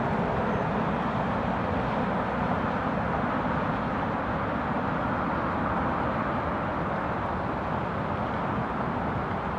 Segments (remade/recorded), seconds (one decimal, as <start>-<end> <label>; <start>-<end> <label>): 0.0-9.6 recorded